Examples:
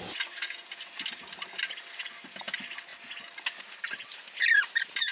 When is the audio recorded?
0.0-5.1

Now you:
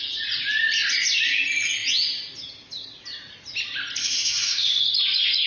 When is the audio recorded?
0.0-4.0; 4.8-5.5

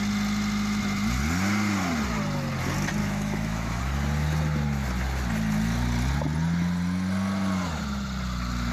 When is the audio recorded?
0.0-3.0; 3.8-8.7

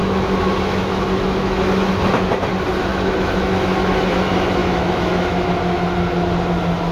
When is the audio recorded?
1.9-2.9; 4.0-4.6; 5.5-6.9

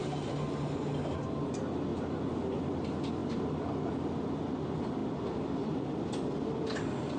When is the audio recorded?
0.0-7.2